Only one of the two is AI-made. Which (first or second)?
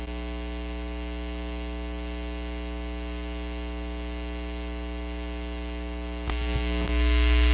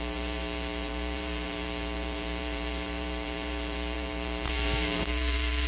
second